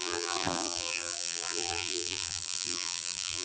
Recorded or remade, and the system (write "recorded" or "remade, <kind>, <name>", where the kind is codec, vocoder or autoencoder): remade, vocoder, BigVGAN v2